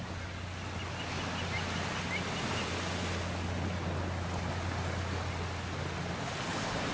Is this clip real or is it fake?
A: real